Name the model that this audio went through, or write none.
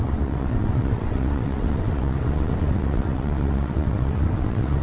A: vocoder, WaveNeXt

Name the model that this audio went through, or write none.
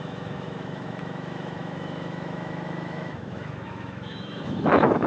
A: autoencoder, DAC-VAE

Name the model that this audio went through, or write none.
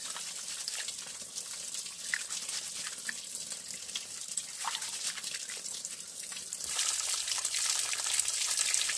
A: vocoder, BigVGAN v2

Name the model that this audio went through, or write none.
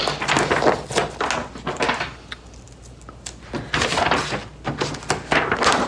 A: none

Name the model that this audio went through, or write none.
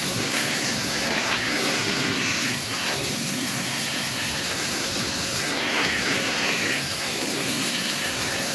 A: codec, SNAC